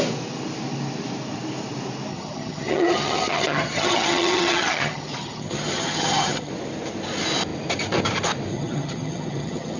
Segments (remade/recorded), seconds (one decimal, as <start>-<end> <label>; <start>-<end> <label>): 0.0-2.1 recorded; 2.1-6.5 remade; 6.5-8.5 recorded; 8.5-9.8 remade